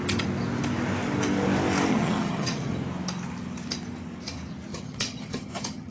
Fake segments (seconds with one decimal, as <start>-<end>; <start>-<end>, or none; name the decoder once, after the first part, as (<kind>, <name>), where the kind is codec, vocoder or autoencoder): 1.9-2.7 (vocoder, HiFi-GAN); 4.7-5.9